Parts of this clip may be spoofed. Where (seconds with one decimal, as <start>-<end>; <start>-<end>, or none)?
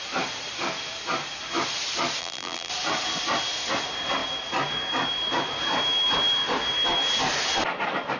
2.2-2.7